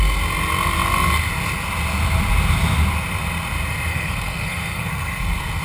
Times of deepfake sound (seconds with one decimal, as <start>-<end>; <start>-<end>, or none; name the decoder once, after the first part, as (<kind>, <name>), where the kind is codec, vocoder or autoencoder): 3.9-5.6 (codec, SNAC)